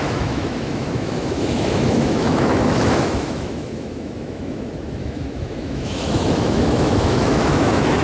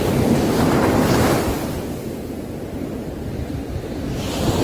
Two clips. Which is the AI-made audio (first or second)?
first